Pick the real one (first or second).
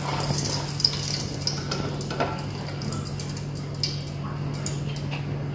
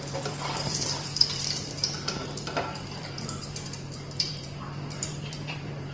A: first